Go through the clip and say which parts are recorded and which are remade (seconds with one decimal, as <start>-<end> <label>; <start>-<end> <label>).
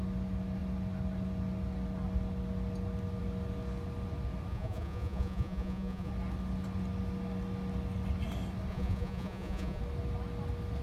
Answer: 0.0-4.5 recorded; 4.5-6.1 remade; 6.1-8.7 recorded; 8.7-9.8 remade; 9.8-10.8 recorded